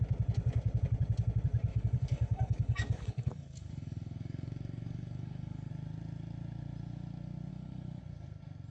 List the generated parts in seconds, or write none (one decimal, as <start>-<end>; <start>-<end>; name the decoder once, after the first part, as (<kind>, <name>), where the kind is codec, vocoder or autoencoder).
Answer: 1.7-5.7 (codec, DAC); 7.5-8.0